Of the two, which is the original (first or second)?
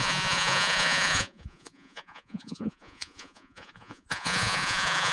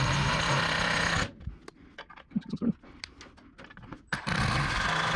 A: second